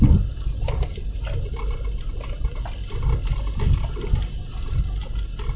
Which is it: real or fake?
real